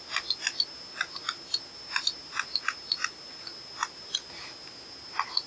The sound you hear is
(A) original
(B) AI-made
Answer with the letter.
A